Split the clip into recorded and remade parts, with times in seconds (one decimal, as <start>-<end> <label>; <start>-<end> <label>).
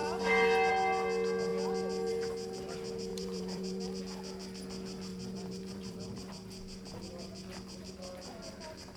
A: 0.0-3.1 recorded; 3.1-4.0 remade; 4.0-5.1 recorded; 5.1-6.3 remade; 6.3-9.0 recorded